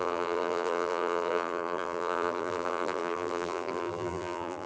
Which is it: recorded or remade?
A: remade